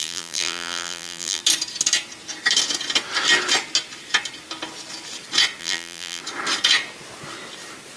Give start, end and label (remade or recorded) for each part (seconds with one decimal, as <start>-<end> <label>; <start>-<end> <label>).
0.0-1.4 remade; 1.4-5.6 recorded; 5.6-6.2 remade; 6.2-8.0 recorded